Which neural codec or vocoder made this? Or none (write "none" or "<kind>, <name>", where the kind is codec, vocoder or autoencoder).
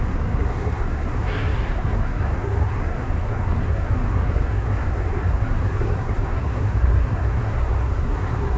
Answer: codec, SNAC